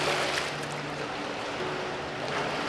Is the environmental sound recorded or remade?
recorded